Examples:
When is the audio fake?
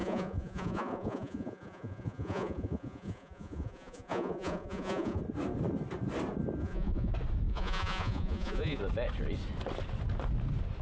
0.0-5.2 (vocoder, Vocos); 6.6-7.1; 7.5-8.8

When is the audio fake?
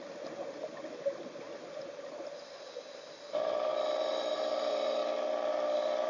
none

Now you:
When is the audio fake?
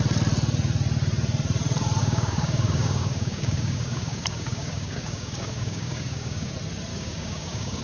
2.0-6.5 (codec, DAC); 6.9-7.8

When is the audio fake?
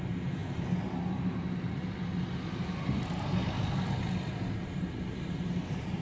none